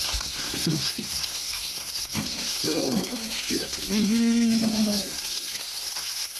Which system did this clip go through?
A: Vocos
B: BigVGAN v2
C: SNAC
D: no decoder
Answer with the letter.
C